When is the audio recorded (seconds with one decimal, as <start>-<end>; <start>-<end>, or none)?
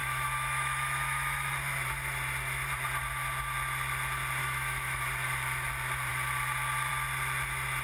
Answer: 1.5-4.4; 5.0-7.8